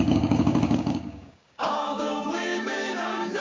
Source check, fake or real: fake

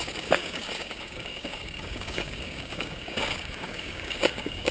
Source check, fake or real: fake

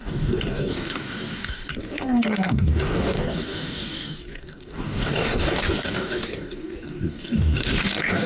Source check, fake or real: fake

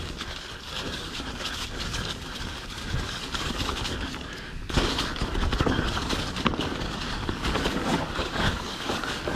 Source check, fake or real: fake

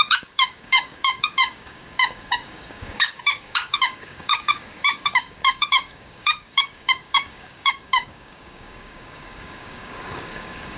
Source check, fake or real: fake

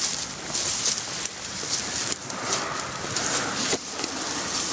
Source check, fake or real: real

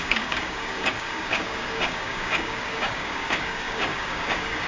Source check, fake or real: fake